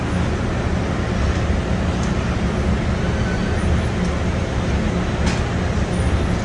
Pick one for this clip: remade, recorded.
recorded